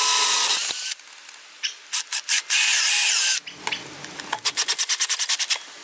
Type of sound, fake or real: real